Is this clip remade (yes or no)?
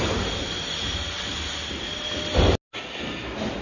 no